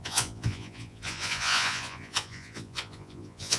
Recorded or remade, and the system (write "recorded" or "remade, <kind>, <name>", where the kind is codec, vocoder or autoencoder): remade, vocoder, Vocos